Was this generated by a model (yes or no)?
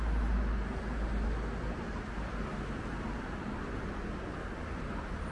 no